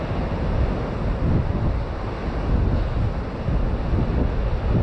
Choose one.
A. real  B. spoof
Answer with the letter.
A